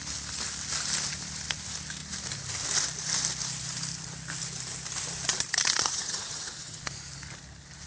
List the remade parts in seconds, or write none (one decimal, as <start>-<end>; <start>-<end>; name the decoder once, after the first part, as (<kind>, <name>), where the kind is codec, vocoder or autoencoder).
5.9-6.8 (vocoder, HiFi-GAN)